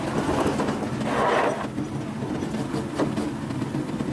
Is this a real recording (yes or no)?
yes